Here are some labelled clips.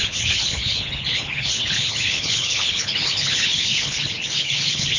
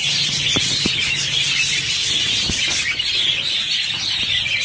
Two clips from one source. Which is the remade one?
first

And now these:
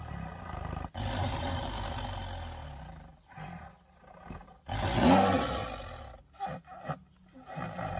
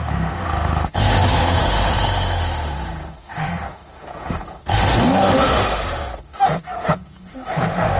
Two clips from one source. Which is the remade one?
second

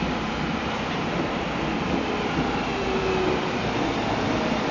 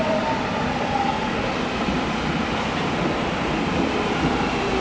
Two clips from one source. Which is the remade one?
second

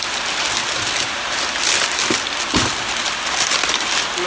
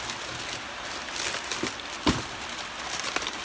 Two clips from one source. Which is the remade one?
second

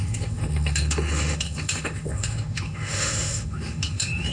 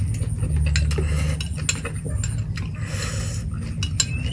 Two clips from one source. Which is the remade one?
first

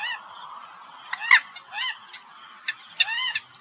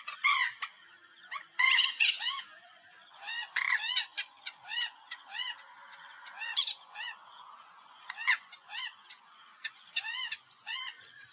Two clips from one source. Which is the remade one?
second